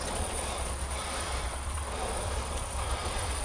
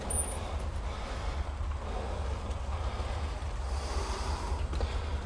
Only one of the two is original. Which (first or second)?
second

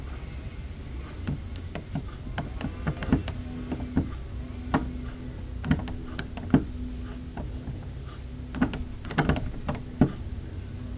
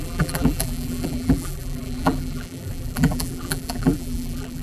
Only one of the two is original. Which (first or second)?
first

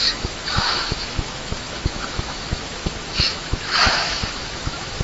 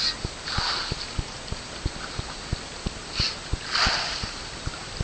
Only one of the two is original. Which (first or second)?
second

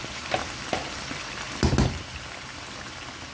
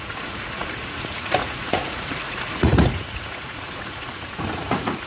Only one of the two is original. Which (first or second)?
first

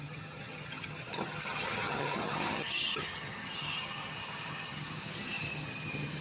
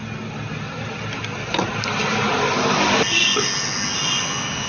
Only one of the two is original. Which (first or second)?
second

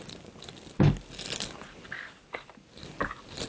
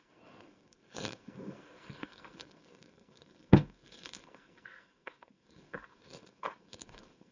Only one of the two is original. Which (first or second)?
first